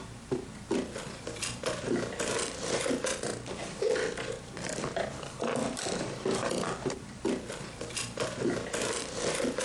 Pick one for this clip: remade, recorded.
remade